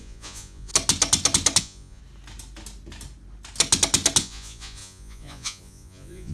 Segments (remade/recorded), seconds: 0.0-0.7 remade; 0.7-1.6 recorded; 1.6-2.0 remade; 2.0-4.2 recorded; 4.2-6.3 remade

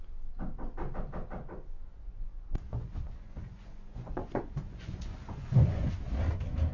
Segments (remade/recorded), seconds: 0.0-1.9 recorded; 1.9-5.9 remade; 5.9-6.7 recorded

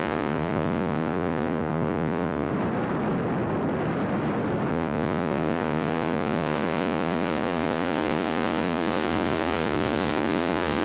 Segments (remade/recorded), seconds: 0.0-2.5 remade; 2.5-4.7 recorded; 4.7-10.8 remade

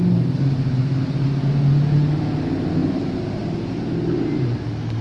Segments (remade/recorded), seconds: 0.0-5.0 recorded

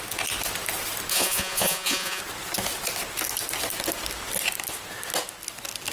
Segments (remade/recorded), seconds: 0.0-1.1 recorded; 1.1-2.2 remade; 2.2-5.9 recorded

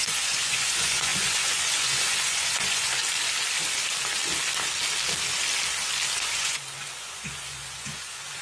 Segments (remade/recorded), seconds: 0.0-3.0 remade; 3.0-6.2 recorded; 6.2-8.4 remade

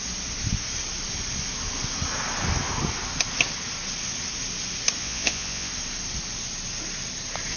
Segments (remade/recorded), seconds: 0.0-5.0 recorded; 5.0-5.7 remade; 5.7-7.6 recorded

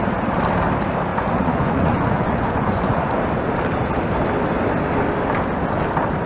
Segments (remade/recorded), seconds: 0.0-1.1 recorded; 1.1-3.2 remade; 3.2-6.3 recorded